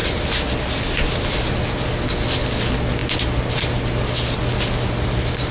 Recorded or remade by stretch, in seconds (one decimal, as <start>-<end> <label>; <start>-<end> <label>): 0.0-5.5 recorded